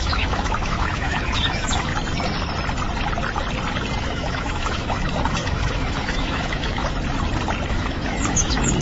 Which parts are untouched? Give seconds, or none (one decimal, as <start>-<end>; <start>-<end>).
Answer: 1.9-4.0; 6.8-7.7

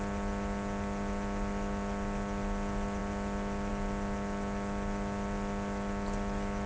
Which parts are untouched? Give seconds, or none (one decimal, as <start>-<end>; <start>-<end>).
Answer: 0.0-6.7

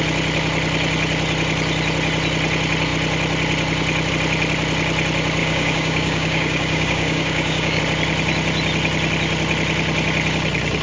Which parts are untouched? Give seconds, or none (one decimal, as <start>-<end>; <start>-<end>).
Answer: 0.0-5.4; 7.8-10.8

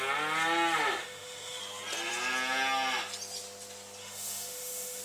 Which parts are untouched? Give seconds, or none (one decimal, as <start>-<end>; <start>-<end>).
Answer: 0.0-1.0; 1.6-4.0

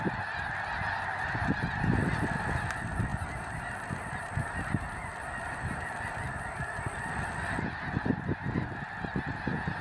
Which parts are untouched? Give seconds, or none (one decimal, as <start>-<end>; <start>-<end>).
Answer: 0.0-3.1; 7.7-9.8

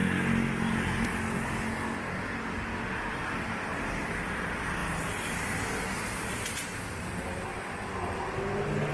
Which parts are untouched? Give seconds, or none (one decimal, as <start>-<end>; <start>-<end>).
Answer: 0.0-8.9

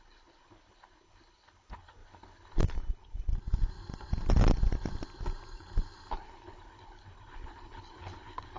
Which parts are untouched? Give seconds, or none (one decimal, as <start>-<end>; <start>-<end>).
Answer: 3.3-6.1

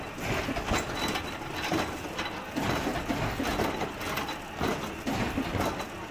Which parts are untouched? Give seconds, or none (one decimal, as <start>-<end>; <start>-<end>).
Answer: 0.0-6.1